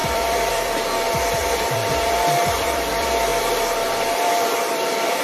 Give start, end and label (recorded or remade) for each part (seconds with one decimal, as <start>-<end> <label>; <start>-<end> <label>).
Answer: 0.0-5.2 remade